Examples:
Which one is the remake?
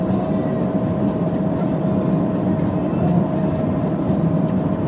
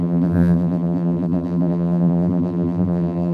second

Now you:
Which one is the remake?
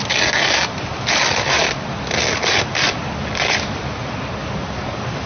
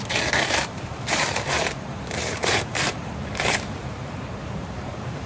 second